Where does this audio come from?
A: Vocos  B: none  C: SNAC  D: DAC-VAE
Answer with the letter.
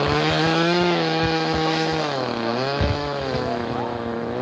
D